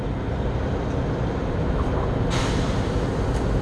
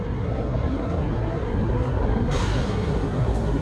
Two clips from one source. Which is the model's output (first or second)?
second